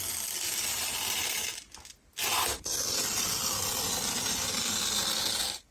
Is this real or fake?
real